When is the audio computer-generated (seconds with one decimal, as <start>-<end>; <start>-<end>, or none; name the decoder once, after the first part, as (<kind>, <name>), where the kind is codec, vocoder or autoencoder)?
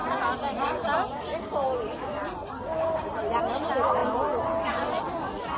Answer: none